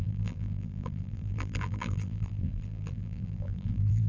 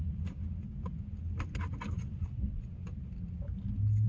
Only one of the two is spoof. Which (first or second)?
first